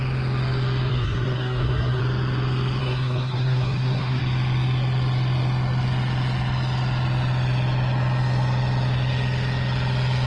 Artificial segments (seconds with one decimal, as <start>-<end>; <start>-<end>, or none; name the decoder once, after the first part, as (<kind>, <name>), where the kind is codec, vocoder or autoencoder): 0.9-2.0 (codec, SNAC); 2.8-4.2